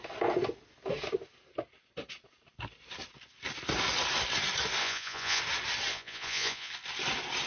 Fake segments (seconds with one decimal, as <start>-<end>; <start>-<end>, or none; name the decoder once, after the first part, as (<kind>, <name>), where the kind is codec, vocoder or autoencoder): 4.8-5.4 (vocoder, Vocos); 5.9-6.7

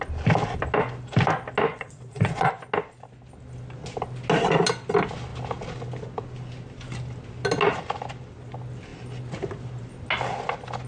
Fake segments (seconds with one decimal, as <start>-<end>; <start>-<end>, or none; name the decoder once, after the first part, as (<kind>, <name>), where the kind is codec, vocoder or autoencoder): 1.7-2.5 (vocoder, Vocos)

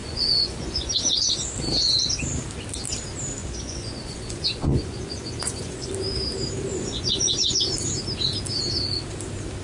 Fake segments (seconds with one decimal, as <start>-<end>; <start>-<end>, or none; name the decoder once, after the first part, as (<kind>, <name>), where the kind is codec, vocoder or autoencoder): 0.0-0.9 (vocoder, Vocos); 3.4-5.9; 6.7-7.6

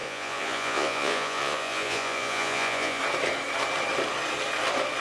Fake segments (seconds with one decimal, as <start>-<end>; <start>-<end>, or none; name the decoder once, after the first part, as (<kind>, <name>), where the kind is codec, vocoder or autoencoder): 0.0-3.0 (vocoder, Vocos)

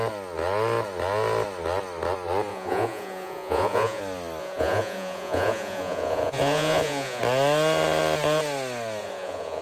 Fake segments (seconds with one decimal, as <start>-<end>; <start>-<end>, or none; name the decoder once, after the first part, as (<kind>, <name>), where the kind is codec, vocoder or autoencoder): 2.5-4.0 (vocoder, Vocos); 4.4-7.2; 9.0-9.6